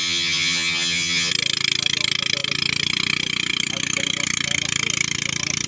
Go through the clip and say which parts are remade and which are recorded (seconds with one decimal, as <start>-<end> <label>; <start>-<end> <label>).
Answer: 0.0-1.3 remade; 1.3-5.7 recorded